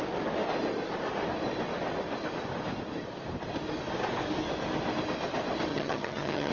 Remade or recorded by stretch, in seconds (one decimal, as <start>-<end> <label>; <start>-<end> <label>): 0.0-5.7 recorded; 5.7-6.5 remade

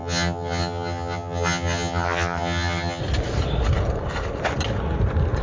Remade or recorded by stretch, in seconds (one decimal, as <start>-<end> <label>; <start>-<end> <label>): 0.0-3.0 remade; 3.0-5.4 recorded

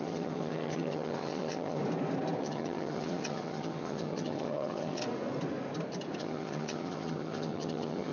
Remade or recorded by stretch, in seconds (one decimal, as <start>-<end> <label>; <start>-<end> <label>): 0.0-1.8 remade; 1.8-2.4 recorded; 2.4-5.0 remade; 5.0-6.2 recorded; 6.2-8.1 remade

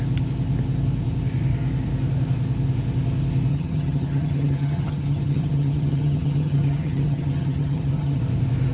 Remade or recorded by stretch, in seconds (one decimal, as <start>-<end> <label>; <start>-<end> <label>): 0.0-3.5 recorded; 3.5-8.2 remade; 8.2-8.7 recorded

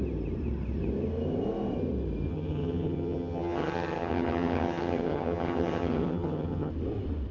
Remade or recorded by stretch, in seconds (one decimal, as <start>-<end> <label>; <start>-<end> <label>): 0.0-2.3 recorded; 2.3-6.7 remade; 6.7-7.3 recorded